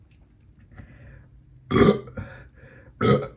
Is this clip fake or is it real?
real